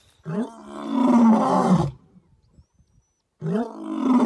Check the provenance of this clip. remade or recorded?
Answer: recorded